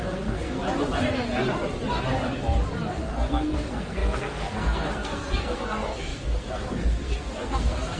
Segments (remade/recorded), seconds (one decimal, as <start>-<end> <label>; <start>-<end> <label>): 0.0-0.6 remade; 0.6-2.9 recorded; 2.9-8.0 remade